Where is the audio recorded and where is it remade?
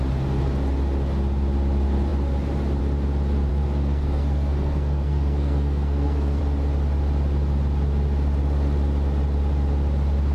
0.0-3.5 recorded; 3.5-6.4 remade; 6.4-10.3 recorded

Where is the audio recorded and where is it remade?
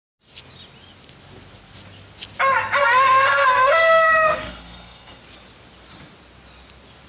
0.0-2.8 recorded; 2.8-5.2 remade; 5.2-7.1 recorded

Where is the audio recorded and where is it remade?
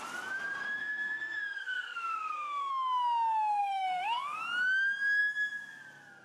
0.0-0.8 recorded; 0.8-2.7 remade; 2.7-3.6 recorded; 3.6-4.4 remade; 4.4-6.2 recorded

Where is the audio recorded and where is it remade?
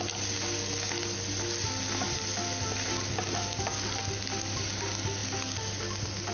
0.0-6.3 recorded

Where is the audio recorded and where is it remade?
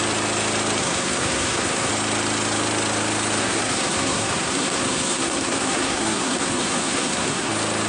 0.0-0.8 recorded; 0.8-1.9 remade; 1.9-3.4 recorded; 3.4-7.5 remade; 7.5-7.9 recorded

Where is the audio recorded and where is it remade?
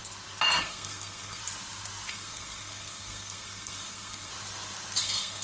0.0-0.6 recorded; 0.6-1.4 remade; 1.4-2.1 recorded; 2.1-4.3 remade; 4.3-5.0 recorded; 5.0-5.4 remade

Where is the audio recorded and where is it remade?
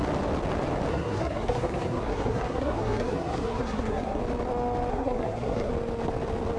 0.0-0.9 recorded; 0.9-4.2 remade; 4.2-4.9 recorded; 4.9-5.7 remade; 5.7-6.6 recorded